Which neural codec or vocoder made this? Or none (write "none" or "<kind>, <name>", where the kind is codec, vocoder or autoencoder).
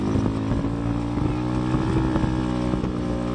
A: none